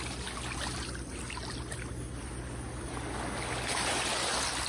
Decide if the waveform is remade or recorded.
recorded